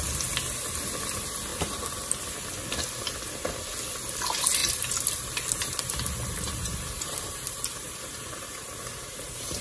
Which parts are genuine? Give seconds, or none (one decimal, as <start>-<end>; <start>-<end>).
0.0-1.5; 2.1-4.6